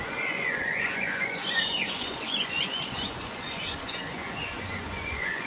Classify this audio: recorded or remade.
remade